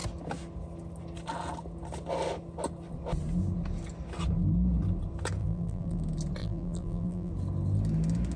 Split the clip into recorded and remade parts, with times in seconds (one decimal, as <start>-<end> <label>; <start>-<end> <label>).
0.0-5.4 recorded; 5.4-6.0 remade; 6.0-6.4 recorded; 6.4-7.3 remade; 7.3-8.4 recorded